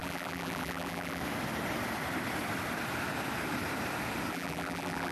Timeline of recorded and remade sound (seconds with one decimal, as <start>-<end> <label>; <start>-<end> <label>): 0.0-1.2 remade; 1.2-4.3 recorded; 4.3-5.1 remade